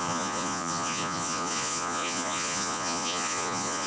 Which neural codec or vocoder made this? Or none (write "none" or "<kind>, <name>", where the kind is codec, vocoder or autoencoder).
vocoder, Vocos